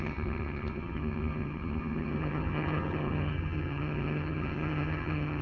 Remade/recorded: remade